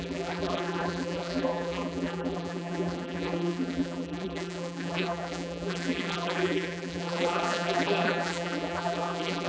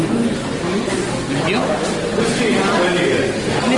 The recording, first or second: second